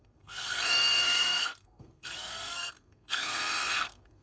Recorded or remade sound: remade